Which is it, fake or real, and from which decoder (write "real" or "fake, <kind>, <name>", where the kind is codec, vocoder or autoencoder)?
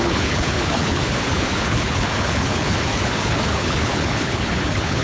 fake, codec, HILCodec